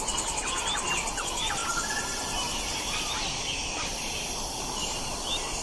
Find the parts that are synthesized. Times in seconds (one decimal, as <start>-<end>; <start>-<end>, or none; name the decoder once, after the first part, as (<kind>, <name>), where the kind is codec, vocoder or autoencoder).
none